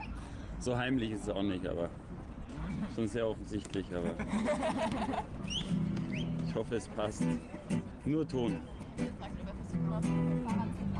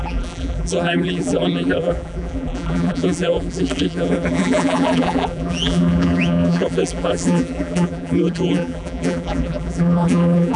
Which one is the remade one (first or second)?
second